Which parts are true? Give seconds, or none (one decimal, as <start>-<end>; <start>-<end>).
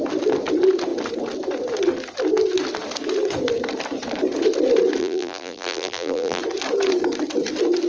0.0-5.0; 6.4-7.9